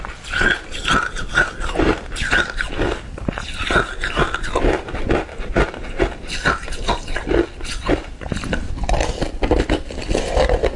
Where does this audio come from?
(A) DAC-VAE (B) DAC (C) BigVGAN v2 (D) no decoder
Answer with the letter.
D